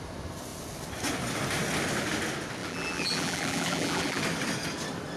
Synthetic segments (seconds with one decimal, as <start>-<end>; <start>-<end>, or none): 2.6-4.2